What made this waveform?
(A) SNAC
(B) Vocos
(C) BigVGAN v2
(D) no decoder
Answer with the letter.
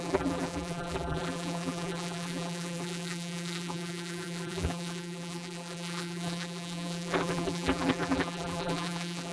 C